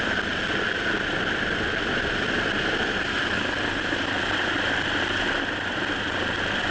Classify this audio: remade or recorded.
remade